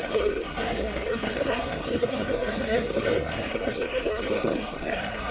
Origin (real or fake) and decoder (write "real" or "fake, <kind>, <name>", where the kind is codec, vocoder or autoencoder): fake, codec, SNAC